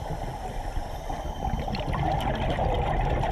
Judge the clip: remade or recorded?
recorded